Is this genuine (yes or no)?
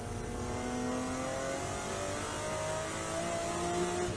yes